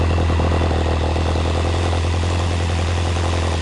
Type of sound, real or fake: real